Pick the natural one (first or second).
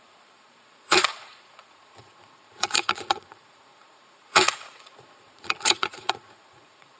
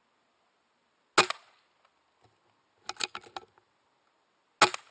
second